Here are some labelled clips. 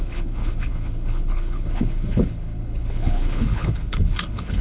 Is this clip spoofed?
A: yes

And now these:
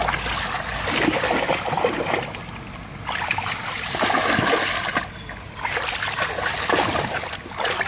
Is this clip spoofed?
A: no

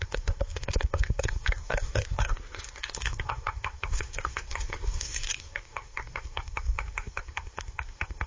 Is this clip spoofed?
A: yes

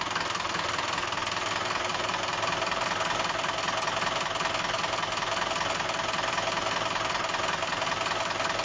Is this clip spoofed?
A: no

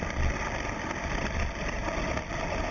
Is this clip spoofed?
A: no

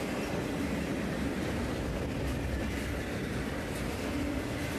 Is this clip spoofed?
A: no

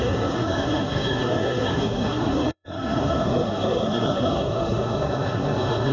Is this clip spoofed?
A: yes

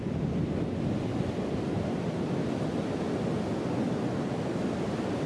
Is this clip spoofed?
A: no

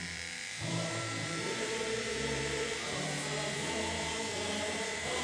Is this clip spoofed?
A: yes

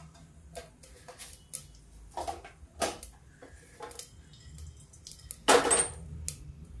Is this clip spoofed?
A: no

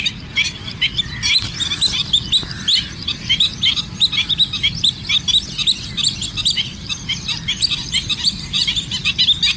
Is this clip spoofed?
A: no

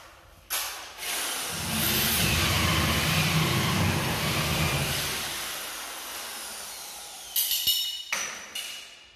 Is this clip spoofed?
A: no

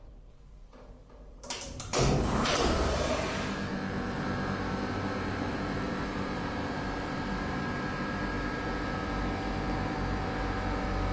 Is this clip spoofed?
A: yes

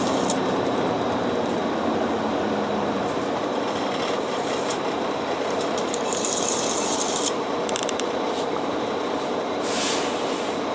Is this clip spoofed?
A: yes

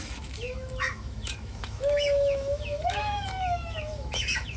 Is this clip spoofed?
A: yes